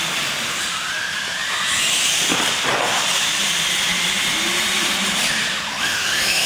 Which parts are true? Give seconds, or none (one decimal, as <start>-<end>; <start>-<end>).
0.0-5.8